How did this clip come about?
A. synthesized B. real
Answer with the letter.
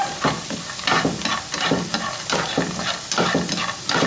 B